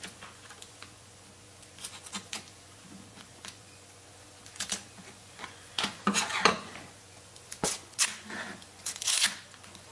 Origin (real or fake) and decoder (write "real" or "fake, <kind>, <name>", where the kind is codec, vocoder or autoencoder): fake, vocoder, Vocos